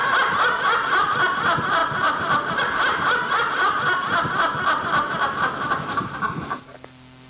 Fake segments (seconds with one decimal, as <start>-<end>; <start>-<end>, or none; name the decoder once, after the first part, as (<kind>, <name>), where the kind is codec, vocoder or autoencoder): none